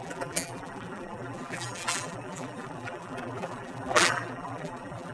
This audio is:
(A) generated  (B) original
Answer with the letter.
A